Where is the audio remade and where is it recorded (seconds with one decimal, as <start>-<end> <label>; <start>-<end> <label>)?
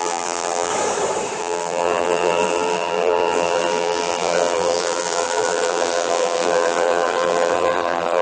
0.0-0.7 remade; 0.7-1.4 recorded; 1.4-8.2 remade